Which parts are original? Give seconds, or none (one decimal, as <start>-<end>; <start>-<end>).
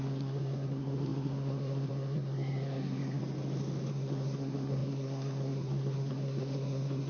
3.2-3.9